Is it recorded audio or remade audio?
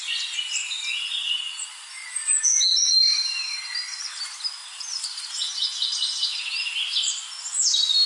recorded